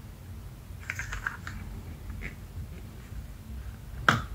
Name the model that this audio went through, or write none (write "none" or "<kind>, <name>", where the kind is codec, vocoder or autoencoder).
none